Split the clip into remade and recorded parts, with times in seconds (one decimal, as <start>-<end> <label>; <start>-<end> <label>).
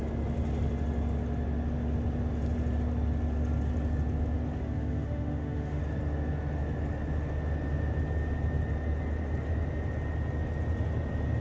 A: 0.0-4.6 recorded; 4.6-5.8 remade; 5.8-11.4 recorded